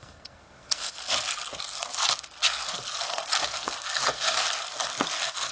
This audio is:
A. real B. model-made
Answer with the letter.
B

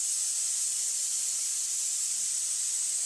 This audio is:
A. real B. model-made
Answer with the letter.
A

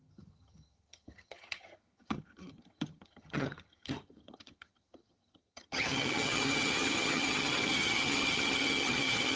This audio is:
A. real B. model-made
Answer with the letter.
B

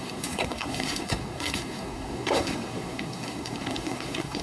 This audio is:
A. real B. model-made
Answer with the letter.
B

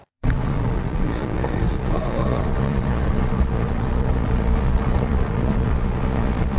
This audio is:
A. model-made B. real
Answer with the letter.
A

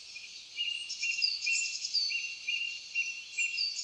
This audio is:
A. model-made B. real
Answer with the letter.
A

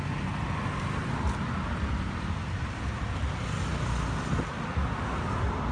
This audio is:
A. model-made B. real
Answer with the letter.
B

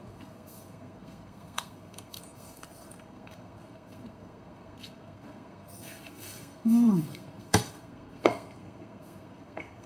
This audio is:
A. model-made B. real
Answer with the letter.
A